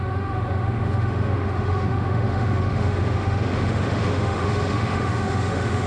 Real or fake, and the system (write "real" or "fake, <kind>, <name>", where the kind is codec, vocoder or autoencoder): fake, autoencoder, DAC-VAE